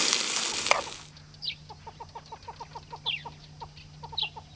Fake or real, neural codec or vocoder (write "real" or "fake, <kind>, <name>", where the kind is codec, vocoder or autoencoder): real